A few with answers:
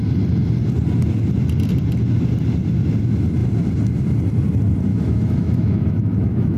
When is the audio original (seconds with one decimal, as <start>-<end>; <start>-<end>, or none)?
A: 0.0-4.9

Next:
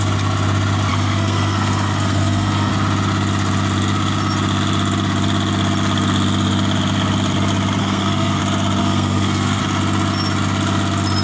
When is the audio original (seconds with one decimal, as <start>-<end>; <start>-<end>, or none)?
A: 0.0-0.9; 2.7-7.8; 8.4-8.8; 9.6-11.2

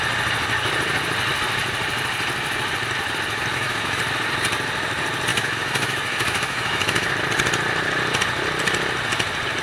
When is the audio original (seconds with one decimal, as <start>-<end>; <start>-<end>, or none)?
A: 0.0-3.5; 4.0-5.3; 7.1-9.6

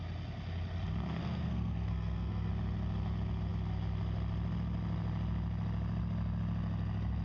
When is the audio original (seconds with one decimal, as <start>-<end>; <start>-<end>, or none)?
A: 0.0-1.2; 2.5-7.2